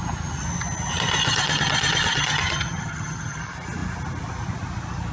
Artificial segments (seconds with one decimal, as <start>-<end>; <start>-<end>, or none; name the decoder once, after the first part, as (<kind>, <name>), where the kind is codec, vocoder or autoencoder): 1.2-3.4 (vocoder, HiFi-GAN)